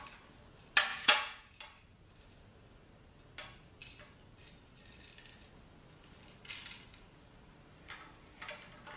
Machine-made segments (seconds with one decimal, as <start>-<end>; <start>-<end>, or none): 0.9-1.6

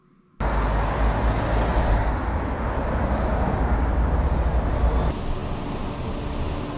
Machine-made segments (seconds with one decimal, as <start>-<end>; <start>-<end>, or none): none

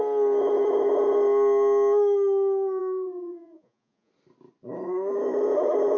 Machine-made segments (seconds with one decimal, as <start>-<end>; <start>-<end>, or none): 2.8-4.1

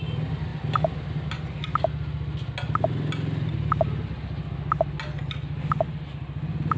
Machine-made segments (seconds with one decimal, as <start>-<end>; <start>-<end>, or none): none

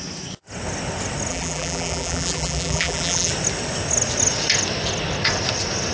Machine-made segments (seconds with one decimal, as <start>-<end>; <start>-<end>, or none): 1.3-3.3

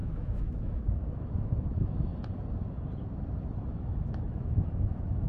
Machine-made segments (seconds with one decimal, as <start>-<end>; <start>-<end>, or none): 0.0-2.1; 3.7-5.3

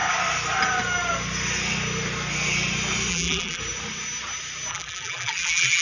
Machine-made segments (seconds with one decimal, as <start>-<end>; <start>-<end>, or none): 3.1-3.6; 4.7-5.8

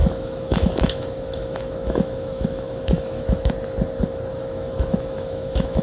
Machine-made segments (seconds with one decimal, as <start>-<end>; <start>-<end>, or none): 0.0-3.5; 4.3-5.8